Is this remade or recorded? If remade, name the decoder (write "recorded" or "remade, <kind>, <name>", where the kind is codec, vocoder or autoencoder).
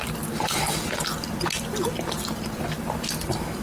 remade, vocoder, BigVGAN v2